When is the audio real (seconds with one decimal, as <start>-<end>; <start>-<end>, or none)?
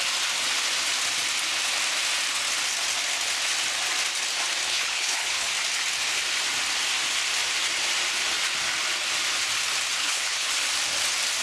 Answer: 0.0-4.7; 5.5-10.0; 10.5-11.4